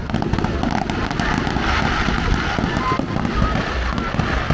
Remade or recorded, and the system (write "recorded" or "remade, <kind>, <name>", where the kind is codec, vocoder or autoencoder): recorded